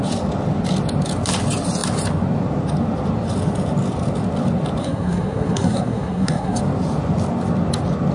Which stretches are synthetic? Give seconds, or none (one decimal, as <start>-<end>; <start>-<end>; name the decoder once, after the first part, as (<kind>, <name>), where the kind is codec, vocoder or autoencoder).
4.8-6.6 (codec, SNAC)